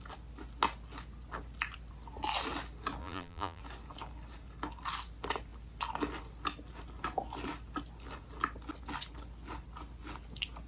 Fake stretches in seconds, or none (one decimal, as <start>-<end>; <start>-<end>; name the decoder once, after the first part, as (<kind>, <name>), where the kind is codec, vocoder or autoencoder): 3.0-3.6 (vocoder, BigVGAN v2)